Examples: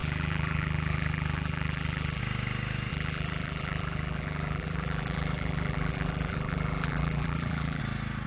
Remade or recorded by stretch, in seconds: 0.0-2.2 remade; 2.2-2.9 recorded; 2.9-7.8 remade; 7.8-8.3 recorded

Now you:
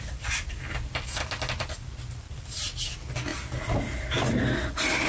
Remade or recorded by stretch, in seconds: 0.0-5.1 recorded

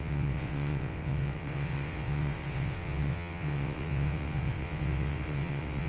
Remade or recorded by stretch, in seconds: 0.0-5.9 remade

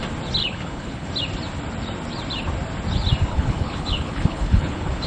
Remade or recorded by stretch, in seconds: 0.0-0.4 recorded; 0.4-1.1 remade; 1.1-3.3 recorded; 3.3-5.1 remade

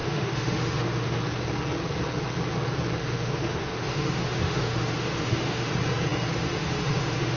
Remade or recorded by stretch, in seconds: 0.0-1.2 remade; 1.2-3.0 recorded; 3.0-5.7 remade; 5.7-6.3 recorded; 6.3-7.4 remade

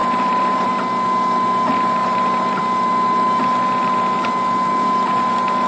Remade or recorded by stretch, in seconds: 0.0-0.7 remade; 0.7-2.0 recorded; 2.0-2.6 remade; 2.6-5.7 recorded

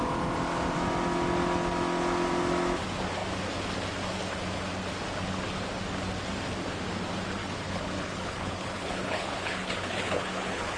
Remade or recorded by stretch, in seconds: 0.0-7.4 recorded; 7.4-10.8 remade